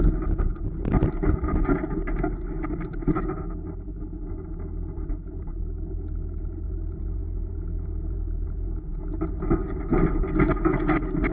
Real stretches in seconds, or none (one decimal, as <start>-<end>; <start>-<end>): 0.0-11.3